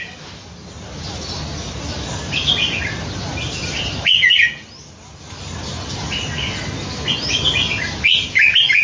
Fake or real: real